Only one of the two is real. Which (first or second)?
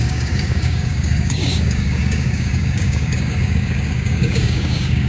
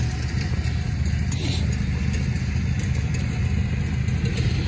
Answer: second